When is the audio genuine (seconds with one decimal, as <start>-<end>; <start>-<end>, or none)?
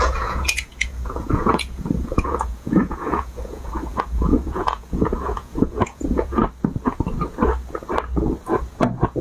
6.4-9.2